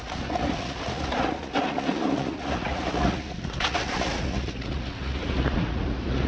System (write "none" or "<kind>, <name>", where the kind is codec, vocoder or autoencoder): vocoder, Vocos